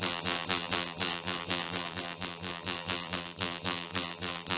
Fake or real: fake